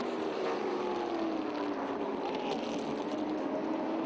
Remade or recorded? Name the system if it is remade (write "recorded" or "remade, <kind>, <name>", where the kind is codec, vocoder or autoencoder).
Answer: recorded